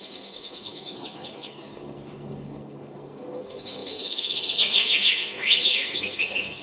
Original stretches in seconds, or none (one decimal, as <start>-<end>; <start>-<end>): none